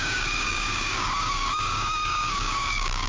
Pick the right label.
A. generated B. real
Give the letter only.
A